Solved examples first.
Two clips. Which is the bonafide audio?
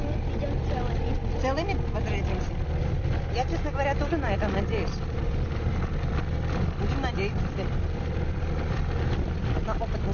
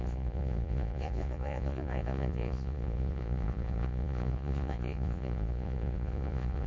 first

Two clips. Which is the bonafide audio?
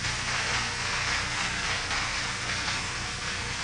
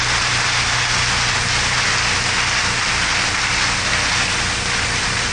second